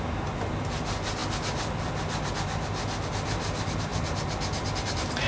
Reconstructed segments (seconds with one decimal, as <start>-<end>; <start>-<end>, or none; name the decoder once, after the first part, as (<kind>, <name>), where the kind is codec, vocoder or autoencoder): none